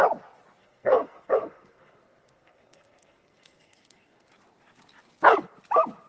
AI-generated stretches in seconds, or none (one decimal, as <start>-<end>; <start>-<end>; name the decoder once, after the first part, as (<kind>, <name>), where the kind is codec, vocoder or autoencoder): 0.6-4.3 (codec, SNAC)